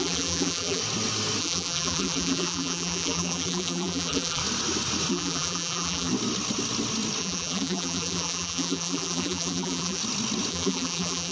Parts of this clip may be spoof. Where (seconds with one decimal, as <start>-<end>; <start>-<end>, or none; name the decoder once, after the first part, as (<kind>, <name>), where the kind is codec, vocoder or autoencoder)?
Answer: 0.0-0.8 (vocoder, BigVGAN v2); 1.4-4.4; 5.1-6.1; 7.2-10.0; 10.5-11.3